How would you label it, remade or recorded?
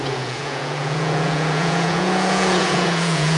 remade